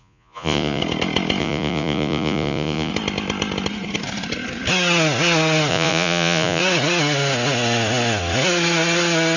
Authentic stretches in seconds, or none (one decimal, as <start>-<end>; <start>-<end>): 0.8-1.4; 2.9-5.7; 6.6-9.4